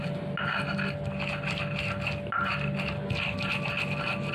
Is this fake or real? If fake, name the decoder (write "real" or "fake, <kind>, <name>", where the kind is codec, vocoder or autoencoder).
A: real